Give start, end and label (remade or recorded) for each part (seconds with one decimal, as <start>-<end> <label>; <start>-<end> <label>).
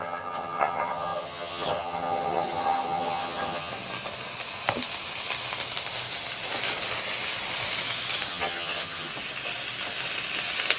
0.0-3.7 remade; 3.7-8.3 recorded; 8.3-9.1 remade; 9.1-10.8 recorded